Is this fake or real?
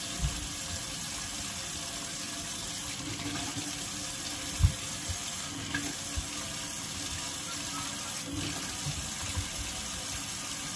real